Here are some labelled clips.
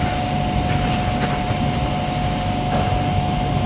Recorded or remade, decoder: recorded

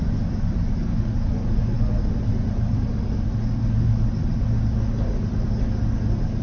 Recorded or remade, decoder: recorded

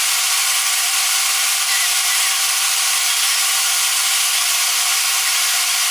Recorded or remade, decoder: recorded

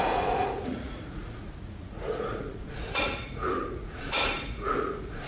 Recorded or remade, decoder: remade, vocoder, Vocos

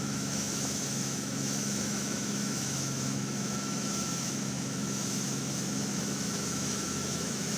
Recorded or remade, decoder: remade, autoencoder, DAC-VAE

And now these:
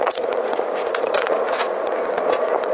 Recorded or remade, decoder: remade, vocoder, Vocos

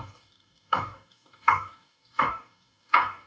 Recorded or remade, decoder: remade, codec, DAC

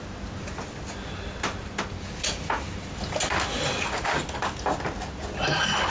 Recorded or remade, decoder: recorded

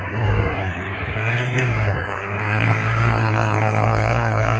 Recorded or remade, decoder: remade, codec, SNAC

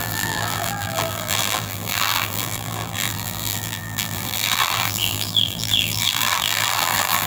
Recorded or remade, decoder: remade, vocoder, BigVGAN v2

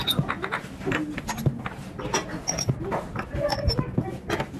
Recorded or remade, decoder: recorded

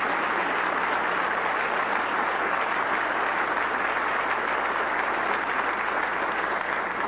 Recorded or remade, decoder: recorded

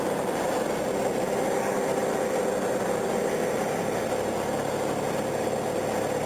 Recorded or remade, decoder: recorded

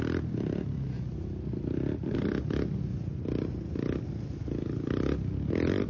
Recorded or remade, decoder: recorded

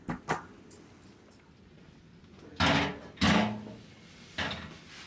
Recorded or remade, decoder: recorded